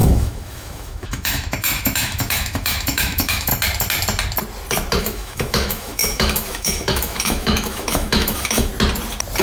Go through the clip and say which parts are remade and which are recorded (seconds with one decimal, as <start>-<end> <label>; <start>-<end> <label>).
0.0-3.5 remade; 3.5-5.0 recorded; 5.0-8.7 remade; 8.7-9.4 recorded